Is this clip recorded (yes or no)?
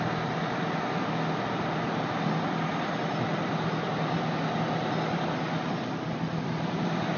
yes